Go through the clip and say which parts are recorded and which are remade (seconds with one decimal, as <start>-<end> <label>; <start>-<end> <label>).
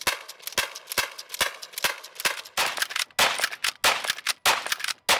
0.0-5.2 recorded